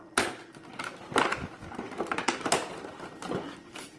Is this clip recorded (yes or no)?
yes